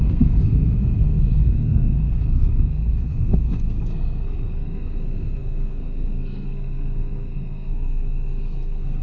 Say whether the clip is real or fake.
fake